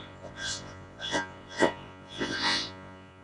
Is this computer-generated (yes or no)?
yes